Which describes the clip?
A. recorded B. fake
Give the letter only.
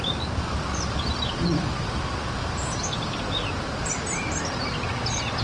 B